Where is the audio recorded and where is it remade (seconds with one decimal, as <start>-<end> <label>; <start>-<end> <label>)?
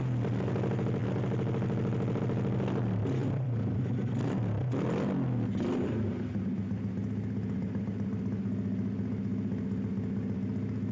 0.0-3.2 recorded; 3.2-3.8 remade; 3.8-10.9 recorded